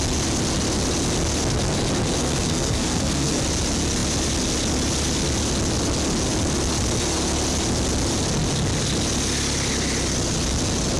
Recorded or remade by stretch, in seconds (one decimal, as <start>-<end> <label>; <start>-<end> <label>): 0.0-2.2 recorded; 2.2-3.4 remade; 3.4-11.0 recorded